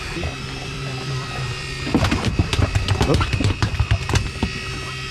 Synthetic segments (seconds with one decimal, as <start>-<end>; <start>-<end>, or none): 0.6-3.7